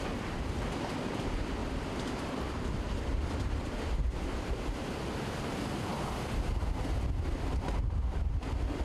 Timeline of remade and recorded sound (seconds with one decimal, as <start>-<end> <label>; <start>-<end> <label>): 0.0-1.6 recorded; 1.6-4.6 remade; 4.6-5.9 recorded; 5.9-6.5 remade; 6.5-8.8 recorded

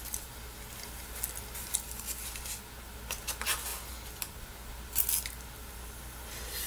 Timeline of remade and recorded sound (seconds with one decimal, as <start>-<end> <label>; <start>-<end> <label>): 0.0-6.7 recorded